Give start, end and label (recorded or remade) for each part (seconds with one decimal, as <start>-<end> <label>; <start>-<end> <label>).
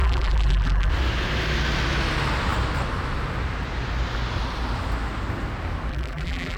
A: 0.0-0.9 remade; 0.9-5.9 recorded; 5.9-6.6 remade